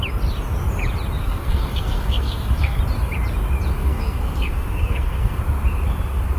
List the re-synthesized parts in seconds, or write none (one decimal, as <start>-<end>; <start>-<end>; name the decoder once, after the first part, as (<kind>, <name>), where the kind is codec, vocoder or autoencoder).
1.2-2.8 (codec, SNAC); 3.8-5.4